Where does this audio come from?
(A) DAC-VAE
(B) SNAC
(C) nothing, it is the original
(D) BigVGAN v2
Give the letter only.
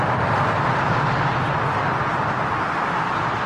C